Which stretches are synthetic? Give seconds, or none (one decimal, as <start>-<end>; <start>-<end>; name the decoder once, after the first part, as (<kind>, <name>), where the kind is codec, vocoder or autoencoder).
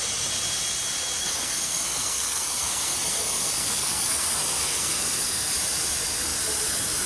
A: 1.2-5.5 (codec, SNAC)